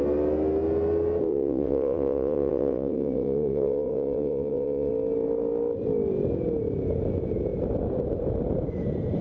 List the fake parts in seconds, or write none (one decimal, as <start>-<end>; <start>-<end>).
1.3-4.9